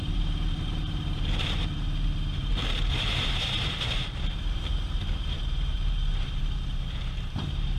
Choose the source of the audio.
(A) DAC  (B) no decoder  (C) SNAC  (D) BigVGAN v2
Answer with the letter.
D